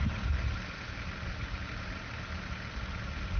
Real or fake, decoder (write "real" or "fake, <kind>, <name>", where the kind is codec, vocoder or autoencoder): real